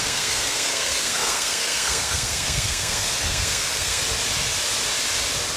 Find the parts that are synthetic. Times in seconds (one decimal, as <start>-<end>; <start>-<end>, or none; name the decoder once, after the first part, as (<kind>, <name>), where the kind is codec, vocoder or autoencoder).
0.0-4.0 (codec, SNAC)